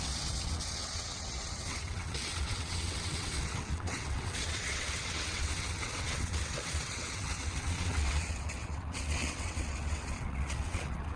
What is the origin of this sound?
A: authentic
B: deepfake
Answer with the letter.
B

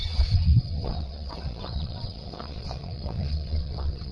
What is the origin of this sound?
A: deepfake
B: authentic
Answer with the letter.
A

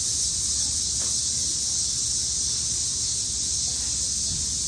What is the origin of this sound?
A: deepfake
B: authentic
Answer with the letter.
B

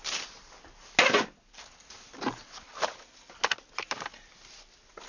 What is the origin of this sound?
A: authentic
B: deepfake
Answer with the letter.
A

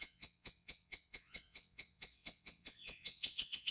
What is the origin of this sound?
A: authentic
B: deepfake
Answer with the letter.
B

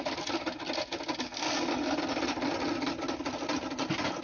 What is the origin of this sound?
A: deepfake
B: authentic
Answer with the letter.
B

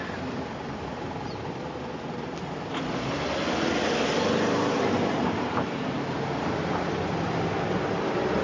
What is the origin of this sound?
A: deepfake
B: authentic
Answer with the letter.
B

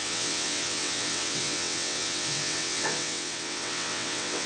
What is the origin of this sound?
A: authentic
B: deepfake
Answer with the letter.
B